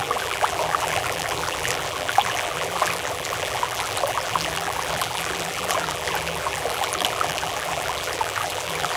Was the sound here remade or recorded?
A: remade